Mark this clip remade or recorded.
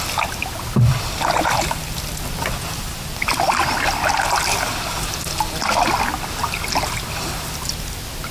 recorded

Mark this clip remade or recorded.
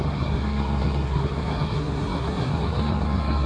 remade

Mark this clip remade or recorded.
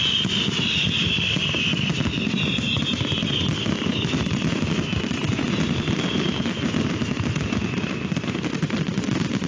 recorded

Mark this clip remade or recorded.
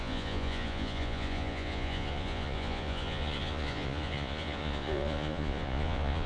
remade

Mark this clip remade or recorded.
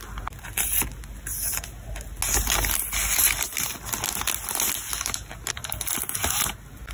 recorded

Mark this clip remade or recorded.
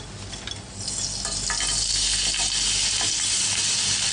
recorded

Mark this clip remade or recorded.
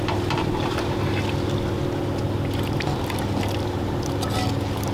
recorded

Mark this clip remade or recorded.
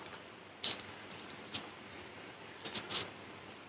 remade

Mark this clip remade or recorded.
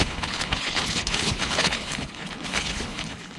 remade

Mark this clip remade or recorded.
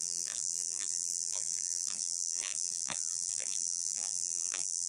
remade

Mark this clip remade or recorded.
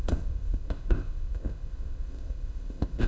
remade